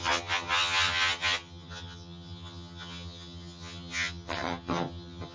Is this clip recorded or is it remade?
remade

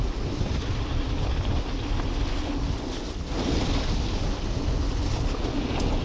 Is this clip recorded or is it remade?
recorded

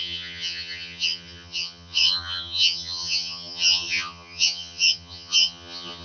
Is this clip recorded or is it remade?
remade